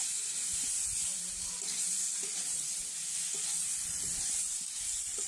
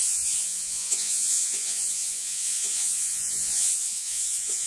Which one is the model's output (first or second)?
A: second